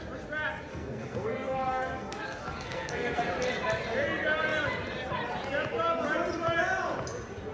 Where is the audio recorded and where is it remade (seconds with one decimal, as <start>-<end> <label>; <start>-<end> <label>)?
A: 0.0-0.7 recorded; 0.7-3.2 remade; 3.2-7.5 recorded